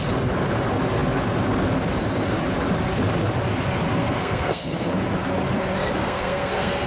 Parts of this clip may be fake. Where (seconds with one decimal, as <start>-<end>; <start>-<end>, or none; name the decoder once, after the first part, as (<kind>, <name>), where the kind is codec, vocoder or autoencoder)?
4.0-4.9 (codec, SNAC); 6.0-6.9